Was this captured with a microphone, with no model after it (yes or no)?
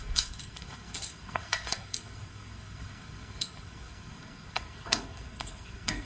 no